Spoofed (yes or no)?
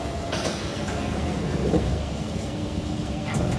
yes